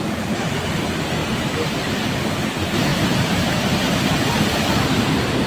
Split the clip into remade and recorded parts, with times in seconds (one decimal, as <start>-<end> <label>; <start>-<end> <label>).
0.0-1.2 recorded; 1.2-1.9 remade; 1.9-2.9 recorded; 2.9-3.7 remade; 3.7-5.5 recorded